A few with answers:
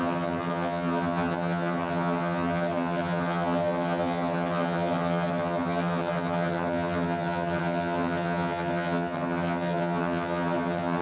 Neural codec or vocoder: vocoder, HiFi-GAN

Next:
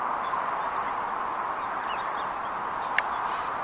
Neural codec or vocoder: none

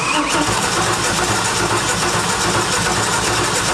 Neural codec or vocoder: none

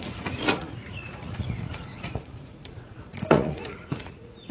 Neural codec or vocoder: vocoder, Vocos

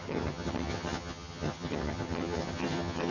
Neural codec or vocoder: vocoder, HiFi-GAN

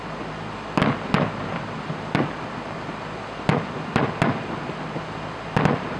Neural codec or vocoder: none